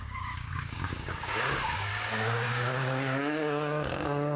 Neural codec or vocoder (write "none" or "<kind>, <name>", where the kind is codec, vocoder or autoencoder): codec, DAC